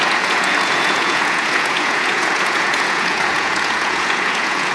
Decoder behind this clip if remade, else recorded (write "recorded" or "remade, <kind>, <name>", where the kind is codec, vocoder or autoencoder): remade, vocoder, Vocos